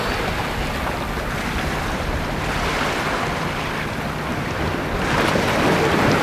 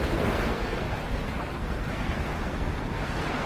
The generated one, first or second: second